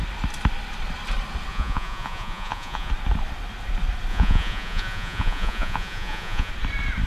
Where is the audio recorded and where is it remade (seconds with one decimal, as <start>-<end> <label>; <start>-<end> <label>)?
0.0-1.5 recorded; 1.5-2.9 remade; 2.9-4.1 recorded; 4.1-6.5 remade; 6.5-7.1 recorded